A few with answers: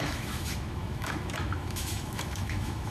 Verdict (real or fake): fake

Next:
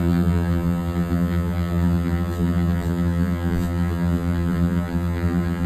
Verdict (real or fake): fake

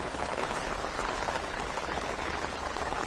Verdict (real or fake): fake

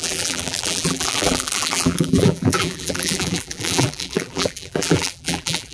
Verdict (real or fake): fake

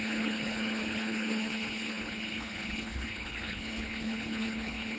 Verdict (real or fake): fake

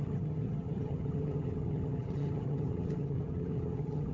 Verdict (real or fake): fake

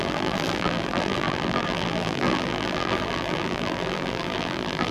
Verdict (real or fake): fake